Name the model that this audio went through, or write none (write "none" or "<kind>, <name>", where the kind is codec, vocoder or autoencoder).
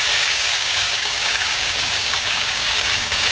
codec, DAC